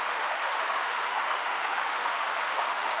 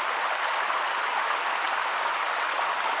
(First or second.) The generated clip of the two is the first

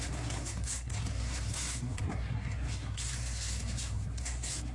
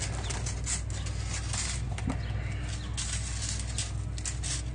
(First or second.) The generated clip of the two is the first